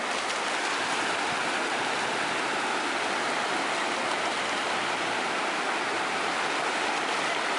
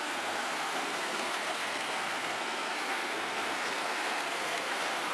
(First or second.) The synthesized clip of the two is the second